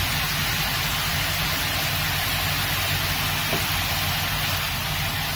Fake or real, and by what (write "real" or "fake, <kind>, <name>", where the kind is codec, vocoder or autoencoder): real